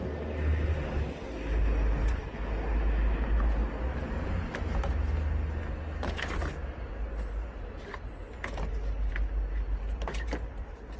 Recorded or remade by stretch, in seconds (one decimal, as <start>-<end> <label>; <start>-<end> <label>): 0.0-11.0 recorded